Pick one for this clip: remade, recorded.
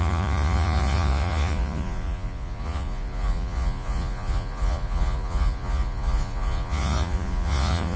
remade